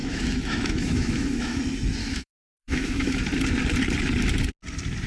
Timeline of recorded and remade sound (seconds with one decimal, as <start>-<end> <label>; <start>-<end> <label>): 0.0-1.6 remade; 1.6-2.0 recorded; 2.0-3.2 remade; 3.2-5.1 recorded